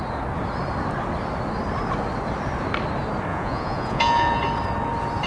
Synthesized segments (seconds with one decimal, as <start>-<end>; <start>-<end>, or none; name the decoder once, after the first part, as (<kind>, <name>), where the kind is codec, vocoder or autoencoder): 3.3-4.4 (vocoder, Vocos)